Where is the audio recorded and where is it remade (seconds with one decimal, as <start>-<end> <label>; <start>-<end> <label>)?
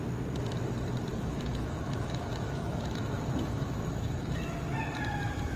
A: 0.0-1.1 recorded; 1.1-4.5 remade; 4.5-5.6 recorded